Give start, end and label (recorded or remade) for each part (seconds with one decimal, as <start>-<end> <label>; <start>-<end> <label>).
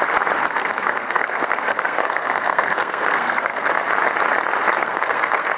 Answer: 0.0-0.4 recorded; 0.4-3.8 remade; 3.8-4.8 recorded; 4.8-5.6 remade